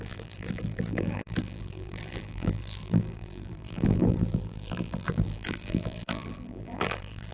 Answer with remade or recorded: remade